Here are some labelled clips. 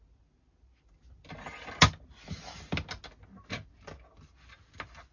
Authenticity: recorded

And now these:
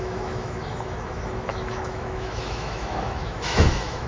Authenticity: remade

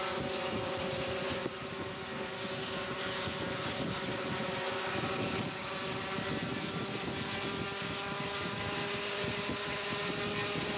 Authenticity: recorded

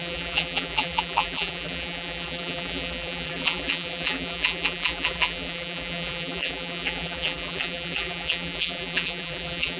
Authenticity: remade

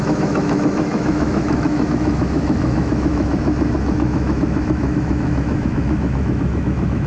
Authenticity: remade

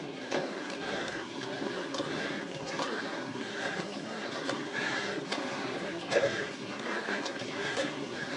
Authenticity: remade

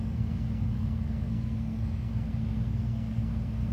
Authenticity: remade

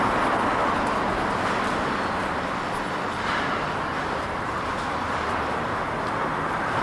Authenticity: recorded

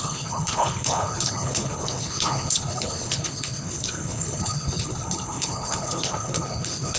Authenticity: remade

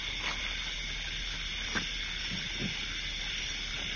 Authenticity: recorded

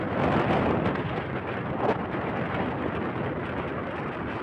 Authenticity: recorded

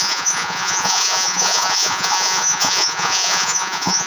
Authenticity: remade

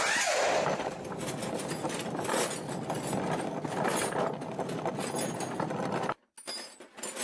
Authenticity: recorded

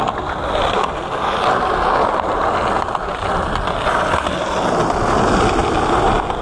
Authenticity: recorded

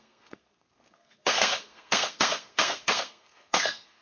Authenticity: remade